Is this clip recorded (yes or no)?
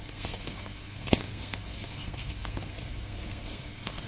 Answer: no